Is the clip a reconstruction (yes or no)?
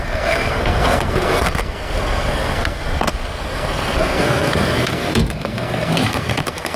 yes